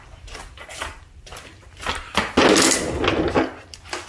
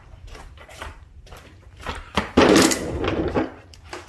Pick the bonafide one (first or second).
first